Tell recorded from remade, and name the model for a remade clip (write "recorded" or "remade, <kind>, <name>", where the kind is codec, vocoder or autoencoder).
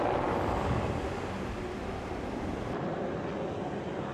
recorded